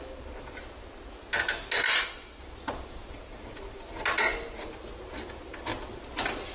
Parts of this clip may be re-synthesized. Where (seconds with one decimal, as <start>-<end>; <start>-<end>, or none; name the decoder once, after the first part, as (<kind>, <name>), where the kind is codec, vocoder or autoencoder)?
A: 1.9-2.4 (autoencoder, DAC-VAE)